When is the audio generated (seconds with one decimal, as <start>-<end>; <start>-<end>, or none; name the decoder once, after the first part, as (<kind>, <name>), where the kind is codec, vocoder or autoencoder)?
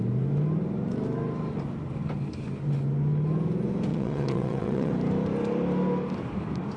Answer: 3.9-4.9 (vocoder, WaveNeXt)